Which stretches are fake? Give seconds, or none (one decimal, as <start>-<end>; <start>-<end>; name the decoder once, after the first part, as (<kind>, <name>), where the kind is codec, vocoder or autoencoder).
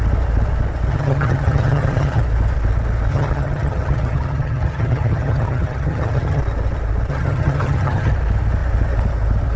0.9-2.2 (vocoder, HiFi-GAN); 3.1-6.4; 7.1-8.1